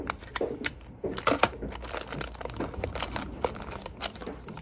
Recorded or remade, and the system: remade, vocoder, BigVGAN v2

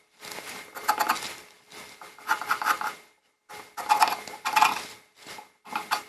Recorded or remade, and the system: recorded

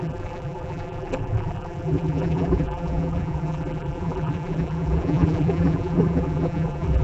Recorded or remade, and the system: remade, vocoder, BigVGAN v2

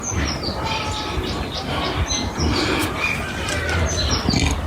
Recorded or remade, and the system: recorded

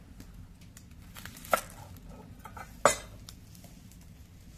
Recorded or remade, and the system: recorded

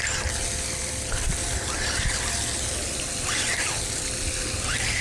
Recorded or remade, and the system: recorded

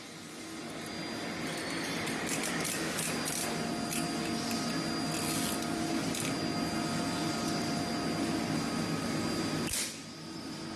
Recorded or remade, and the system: recorded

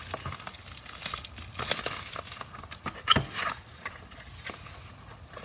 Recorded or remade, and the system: recorded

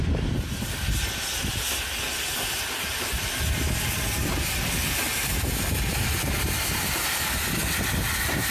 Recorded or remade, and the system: remade, vocoder, BigVGAN v2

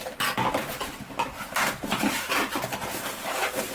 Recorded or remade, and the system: recorded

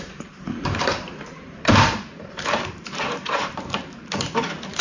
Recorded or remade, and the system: remade, vocoder, BigVGAN v2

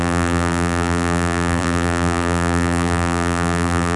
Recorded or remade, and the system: remade, vocoder, BigVGAN v2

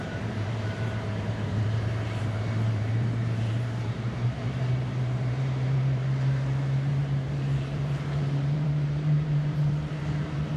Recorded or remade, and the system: remade, vocoder, BigVGAN v2